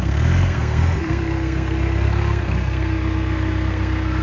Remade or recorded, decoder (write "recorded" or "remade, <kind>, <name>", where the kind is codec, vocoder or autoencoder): remade, codec, SNAC